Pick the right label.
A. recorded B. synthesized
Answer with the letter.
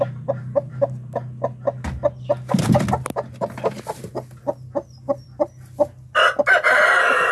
A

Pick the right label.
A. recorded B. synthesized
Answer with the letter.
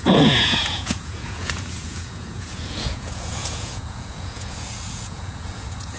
B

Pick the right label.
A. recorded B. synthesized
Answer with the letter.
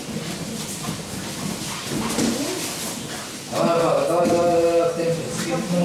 A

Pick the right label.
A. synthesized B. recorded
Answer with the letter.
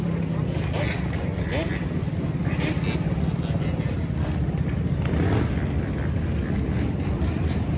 B